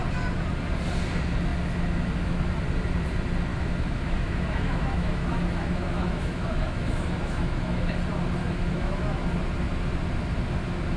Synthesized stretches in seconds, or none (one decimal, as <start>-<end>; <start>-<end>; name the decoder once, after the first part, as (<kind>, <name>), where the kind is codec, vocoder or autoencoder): 3.5-7.9 (autoencoder, DAC-VAE); 8.4-9.3